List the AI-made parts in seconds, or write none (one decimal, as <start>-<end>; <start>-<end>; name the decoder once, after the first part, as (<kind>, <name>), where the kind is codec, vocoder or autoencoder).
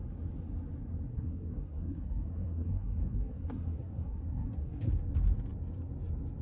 1.1-4.9 (codec, SNAC)